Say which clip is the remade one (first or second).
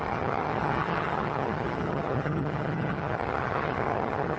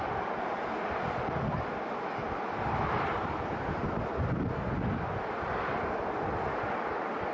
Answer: first